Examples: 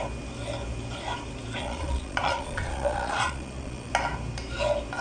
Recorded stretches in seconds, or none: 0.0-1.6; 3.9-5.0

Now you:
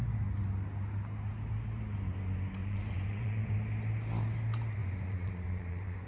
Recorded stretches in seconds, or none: 0.0-2.6; 3.5-4.8

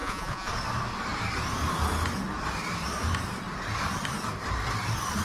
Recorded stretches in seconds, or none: 0.5-5.2

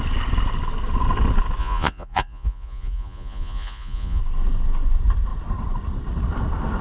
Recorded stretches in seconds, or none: 0.0-1.6; 4.2-6.8